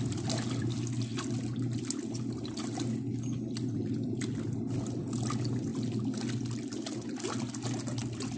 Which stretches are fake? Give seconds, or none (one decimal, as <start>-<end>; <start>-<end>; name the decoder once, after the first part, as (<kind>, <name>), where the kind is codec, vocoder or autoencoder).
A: none